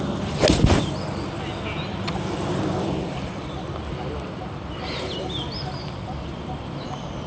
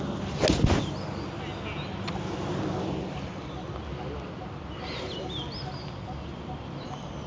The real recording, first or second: second